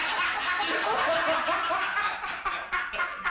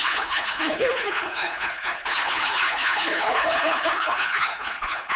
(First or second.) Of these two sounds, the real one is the first